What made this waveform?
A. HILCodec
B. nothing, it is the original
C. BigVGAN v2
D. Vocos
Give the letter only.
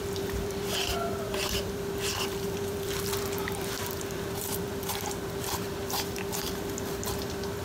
C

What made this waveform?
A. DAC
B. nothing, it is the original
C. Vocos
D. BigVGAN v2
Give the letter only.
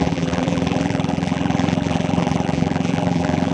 D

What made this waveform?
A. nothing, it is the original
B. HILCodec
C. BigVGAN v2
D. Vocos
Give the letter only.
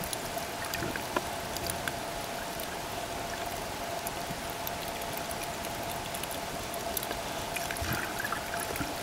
A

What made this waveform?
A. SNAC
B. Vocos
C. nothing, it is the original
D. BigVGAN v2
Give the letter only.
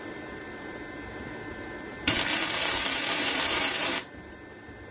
D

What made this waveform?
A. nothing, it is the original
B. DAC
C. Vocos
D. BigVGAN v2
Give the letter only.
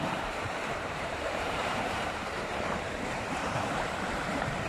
D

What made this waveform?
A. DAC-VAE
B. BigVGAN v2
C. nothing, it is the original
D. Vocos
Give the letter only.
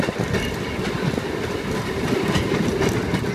C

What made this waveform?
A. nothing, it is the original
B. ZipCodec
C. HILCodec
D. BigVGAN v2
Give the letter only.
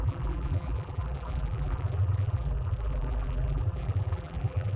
D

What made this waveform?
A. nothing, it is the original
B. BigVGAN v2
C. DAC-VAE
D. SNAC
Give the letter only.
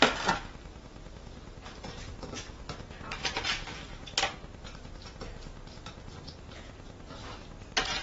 A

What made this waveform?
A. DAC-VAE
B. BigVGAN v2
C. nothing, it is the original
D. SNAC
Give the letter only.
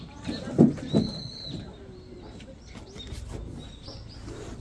C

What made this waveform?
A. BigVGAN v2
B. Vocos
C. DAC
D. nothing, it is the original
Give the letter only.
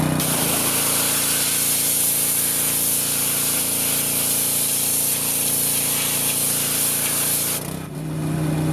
D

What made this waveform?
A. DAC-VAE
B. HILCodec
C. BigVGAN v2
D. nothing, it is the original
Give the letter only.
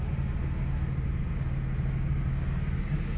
D